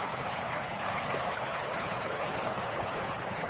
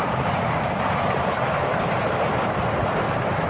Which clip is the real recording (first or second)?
second